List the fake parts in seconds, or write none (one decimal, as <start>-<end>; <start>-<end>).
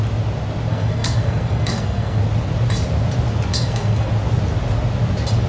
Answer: 0.7-2.2; 3.5-4.1